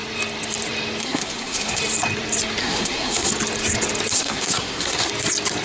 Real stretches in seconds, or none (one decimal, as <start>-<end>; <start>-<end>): 0.0-1.0; 1.8-2.6; 3.3-4.1; 5.1-5.6